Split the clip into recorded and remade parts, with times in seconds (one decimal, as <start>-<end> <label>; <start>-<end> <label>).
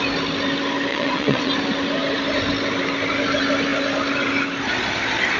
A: 0.0-0.9 recorded; 0.9-1.5 remade; 1.5-5.4 recorded